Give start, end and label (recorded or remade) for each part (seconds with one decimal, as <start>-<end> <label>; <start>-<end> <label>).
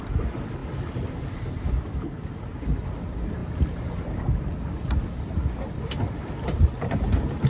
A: 0.0-7.5 recorded